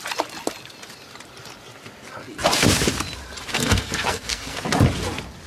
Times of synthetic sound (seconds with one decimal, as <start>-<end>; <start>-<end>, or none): 3.5-4.6